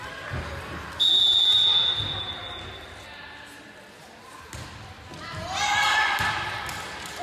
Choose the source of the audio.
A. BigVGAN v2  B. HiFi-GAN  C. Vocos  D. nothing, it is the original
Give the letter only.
D